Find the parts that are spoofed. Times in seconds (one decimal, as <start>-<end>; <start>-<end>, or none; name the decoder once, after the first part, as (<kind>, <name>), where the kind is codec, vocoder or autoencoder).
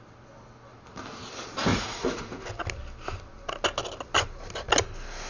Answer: 1.7-2.2 (vocoder, Vocos)